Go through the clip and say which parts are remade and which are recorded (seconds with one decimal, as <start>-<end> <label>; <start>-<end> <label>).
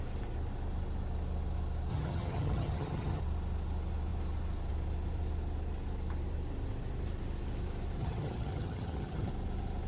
0.0-1.9 recorded; 1.9-3.2 remade; 3.2-8.0 recorded; 8.0-9.3 remade; 9.3-9.9 recorded